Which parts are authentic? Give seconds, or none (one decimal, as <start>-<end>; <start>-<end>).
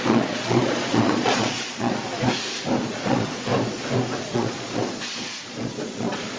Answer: 2.1-2.8; 3.5-4.2